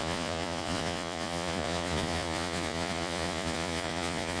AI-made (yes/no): yes